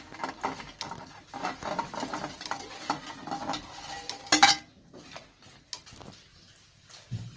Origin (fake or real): real